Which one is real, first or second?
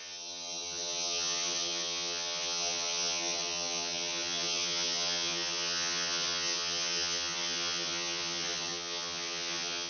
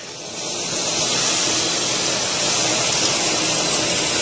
second